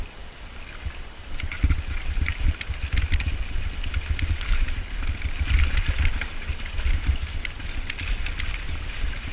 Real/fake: real